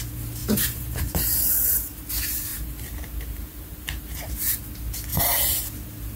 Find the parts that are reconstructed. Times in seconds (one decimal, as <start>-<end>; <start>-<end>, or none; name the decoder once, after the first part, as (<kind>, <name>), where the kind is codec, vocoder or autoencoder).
0.4-2.0 (vocoder, BigVGAN v2); 2.5-4.6; 5.1-5.6